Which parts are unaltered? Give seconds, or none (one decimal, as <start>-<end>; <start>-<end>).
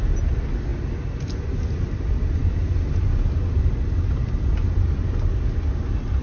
0.0-6.2